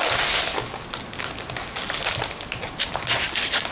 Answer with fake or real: real